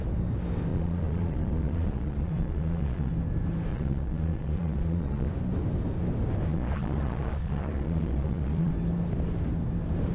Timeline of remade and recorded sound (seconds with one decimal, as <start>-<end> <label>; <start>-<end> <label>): 0.0-0.7 recorded; 0.7-3.1 remade; 3.1-3.7 recorded; 3.7-5.3 remade; 5.3-6.5 recorded; 6.5-8.7 remade; 8.7-10.1 recorded